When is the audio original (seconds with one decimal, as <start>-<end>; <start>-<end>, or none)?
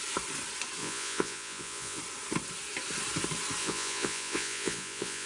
0.0-0.8; 2.0-3.6